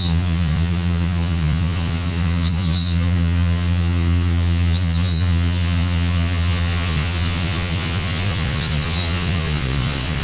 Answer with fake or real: fake